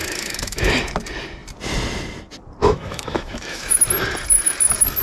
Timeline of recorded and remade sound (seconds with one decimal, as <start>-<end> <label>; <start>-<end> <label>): 0.0-0.7 remade; 0.7-2.6 recorded; 2.6-3.8 remade; 3.8-5.0 recorded